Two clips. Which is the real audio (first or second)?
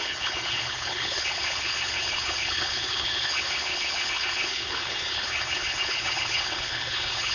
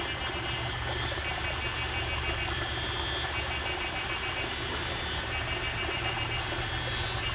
second